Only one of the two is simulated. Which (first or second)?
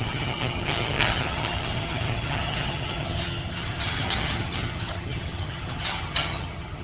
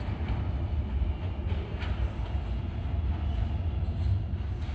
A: first